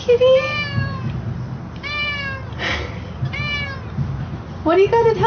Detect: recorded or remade recorded